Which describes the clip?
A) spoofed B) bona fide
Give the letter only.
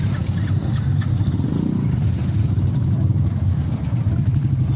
A